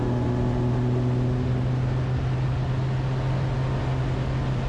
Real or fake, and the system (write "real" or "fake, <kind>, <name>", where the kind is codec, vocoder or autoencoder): real